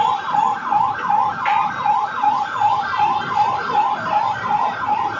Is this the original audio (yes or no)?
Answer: yes